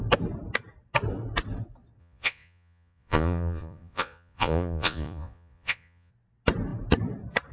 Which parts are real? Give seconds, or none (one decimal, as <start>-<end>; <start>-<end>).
0.0-2.0; 6.1-7.5